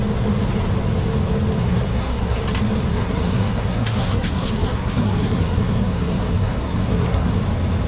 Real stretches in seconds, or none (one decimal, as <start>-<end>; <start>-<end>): 0.0-1.6; 2.4-2.9; 7.4-7.9